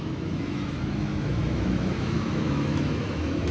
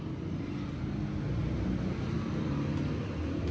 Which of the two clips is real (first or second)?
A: second